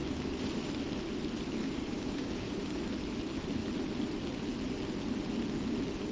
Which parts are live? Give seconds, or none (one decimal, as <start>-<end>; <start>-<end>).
0.0-1.6; 2.8-6.1